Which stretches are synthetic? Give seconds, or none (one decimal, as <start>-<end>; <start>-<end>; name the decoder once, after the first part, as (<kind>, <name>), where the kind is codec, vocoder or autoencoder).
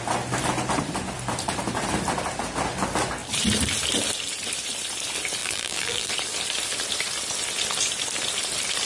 5.4-6.1 (vocoder, BigVGAN v2)